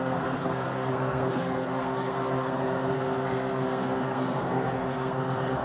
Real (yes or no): no